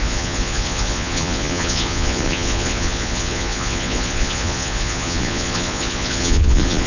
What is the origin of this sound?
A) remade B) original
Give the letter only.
A